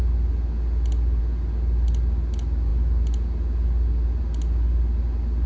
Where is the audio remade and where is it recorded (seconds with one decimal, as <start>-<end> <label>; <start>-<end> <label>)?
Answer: 0.0-5.5 recorded